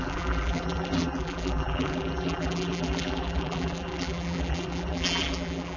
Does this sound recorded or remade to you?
remade